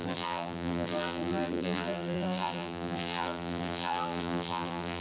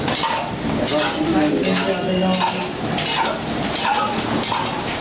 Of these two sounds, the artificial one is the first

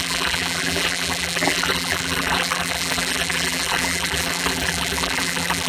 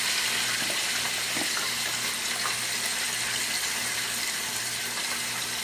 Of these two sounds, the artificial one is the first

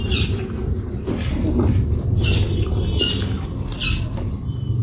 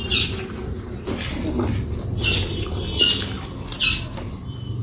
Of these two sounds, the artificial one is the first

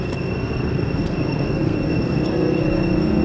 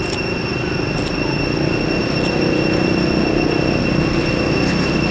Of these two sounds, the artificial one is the first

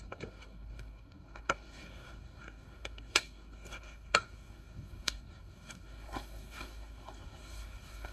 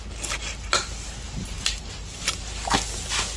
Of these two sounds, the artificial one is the first